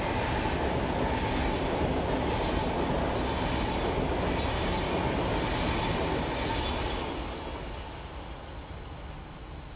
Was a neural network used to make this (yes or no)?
no